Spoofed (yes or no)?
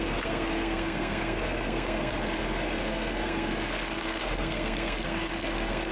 yes